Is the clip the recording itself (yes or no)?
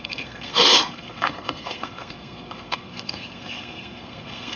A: no